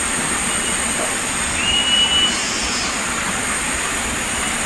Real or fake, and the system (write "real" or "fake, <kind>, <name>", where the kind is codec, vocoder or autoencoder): real